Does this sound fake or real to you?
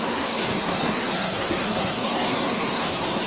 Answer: fake